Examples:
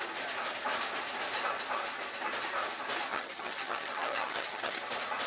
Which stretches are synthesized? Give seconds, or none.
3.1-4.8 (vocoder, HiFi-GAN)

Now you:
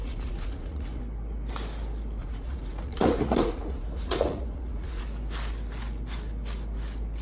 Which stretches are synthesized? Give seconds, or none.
0.0-1.0 (vocoder, Vocos); 2.2-5.0

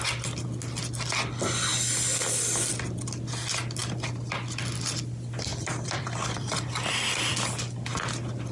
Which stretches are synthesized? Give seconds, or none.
5.5-7.3 (vocoder, BigVGAN v2)

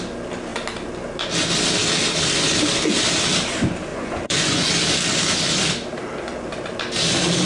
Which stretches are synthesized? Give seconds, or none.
3.9-4.7 (vocoder, Vocos)

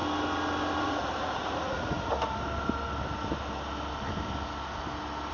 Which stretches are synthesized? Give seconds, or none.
0.8-2.1 (vocoder, Vocos)

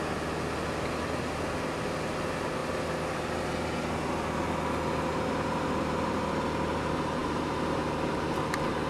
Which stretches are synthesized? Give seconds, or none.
7.2-7.8 (vocoder, BigVGAN v2)